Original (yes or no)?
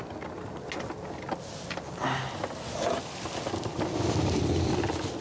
yes